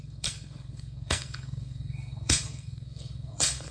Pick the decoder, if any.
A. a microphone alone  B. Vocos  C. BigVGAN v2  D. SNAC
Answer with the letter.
D